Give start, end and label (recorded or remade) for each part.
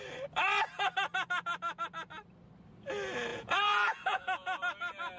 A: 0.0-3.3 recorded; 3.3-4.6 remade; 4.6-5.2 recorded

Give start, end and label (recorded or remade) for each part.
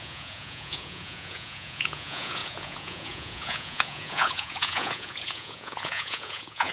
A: 0.0-6.7 remade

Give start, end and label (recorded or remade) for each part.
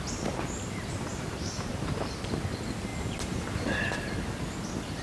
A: 0.0-1.1 recorded; 1.1-2.4 remade; 2.4-2.9 recorded; 2.9-4.0 remade; 4.0-5.0 recorded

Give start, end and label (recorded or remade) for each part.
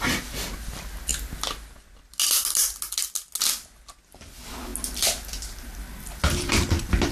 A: 0.0-7.1 recorded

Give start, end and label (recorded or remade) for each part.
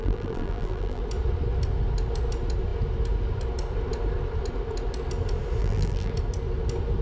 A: 0.0-1.0 remade; 1.0-5.6 recorded; 5.6-6.1 remade; 6.1-7.0 recorded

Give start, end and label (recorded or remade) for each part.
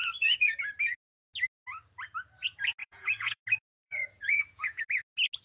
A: 0.0-0.6 remade; 0.6-2.8 recorded; 2.8-3.4 remade; 3.4-3.8 recorded; 3.8-4.8 remade; 4.8-5.4 recorded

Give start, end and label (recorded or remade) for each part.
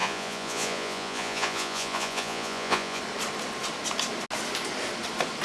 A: 0.0-3.0 remade; 3.0-5.4 recorded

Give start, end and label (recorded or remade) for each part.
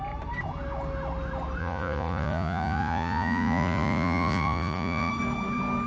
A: 0.0-1.6 recorded; 1.6-5.1 remade; 5.1-5.9 recorded